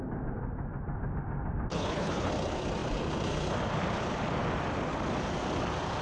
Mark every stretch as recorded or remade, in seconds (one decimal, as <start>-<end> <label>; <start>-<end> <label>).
0.0-1.7 recorded; 1.7-2.3 remade; 2.3-6.0 recorded